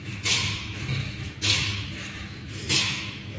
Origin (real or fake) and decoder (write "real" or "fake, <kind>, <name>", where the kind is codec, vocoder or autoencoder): fake, autoencoder, DAC-VAE